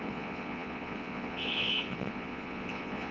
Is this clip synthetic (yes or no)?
yes